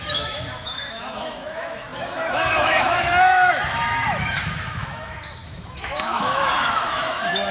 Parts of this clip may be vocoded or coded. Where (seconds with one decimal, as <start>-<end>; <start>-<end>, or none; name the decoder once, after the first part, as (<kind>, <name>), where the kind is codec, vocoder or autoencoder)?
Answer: 0.0-7.5 (autoencoder, DAC-VAE)